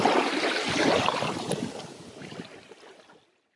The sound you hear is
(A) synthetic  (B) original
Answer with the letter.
B